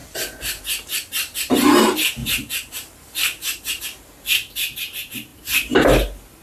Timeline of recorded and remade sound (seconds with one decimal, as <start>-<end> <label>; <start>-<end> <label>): 0.0-0.6 remade; 0.6-2.2 recorded; 2.2-3.8 remade; 3.8-5.3 recorded; 5.3-5.8 remade; 5.8-6.4 recorded